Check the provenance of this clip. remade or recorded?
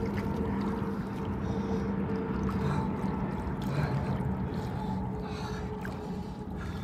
recorded